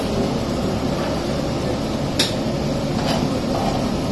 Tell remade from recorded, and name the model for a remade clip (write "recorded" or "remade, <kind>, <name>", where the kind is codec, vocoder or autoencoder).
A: recorded